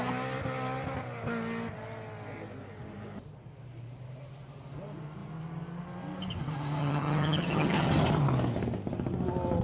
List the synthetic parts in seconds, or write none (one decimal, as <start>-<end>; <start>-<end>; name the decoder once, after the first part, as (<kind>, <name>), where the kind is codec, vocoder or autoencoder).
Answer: 6.8-7.9 (vocoder, HiFi-GAN)